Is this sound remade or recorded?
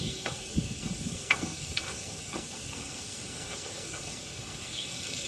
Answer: remade